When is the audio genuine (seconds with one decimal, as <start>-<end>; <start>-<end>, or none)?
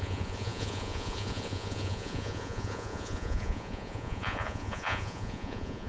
none